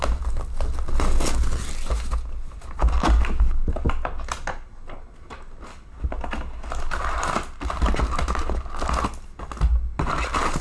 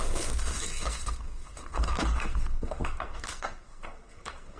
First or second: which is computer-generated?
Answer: second